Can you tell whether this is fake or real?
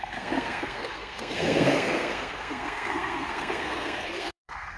fake